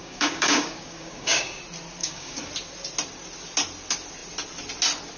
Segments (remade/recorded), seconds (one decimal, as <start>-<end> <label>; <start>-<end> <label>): 0.0-1.6 remade; 1.6-2.0 recorded; 2.0-2.5 remade; 2.5-5.2 recorded